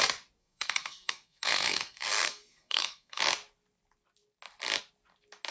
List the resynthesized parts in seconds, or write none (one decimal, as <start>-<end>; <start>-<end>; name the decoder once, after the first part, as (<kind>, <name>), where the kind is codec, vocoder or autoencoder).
0.4-3.2 (codec, SNAC)